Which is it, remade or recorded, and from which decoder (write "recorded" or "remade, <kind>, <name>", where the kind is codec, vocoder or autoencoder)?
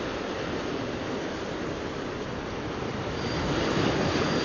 remade, vocoder, BigVGAN v2